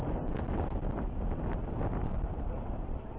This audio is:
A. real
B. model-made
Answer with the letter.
A